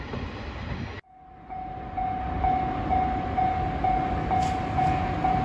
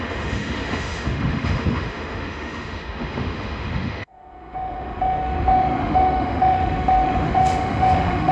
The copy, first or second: second